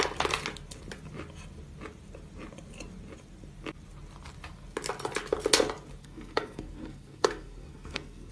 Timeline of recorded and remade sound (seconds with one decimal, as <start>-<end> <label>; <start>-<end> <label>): 0.0-6.0 recorded; 6.0-8.3 remade